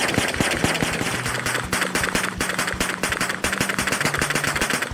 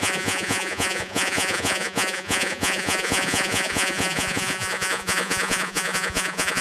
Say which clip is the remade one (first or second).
second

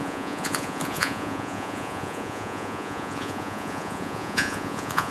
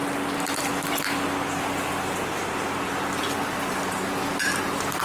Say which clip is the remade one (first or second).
first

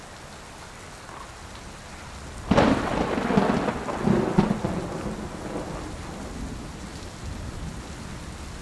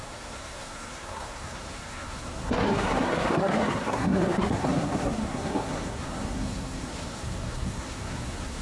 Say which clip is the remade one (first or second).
second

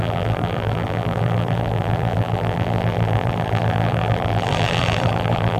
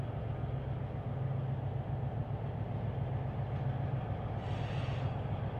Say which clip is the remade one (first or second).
first